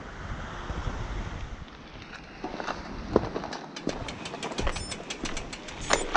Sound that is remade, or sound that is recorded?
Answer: recorded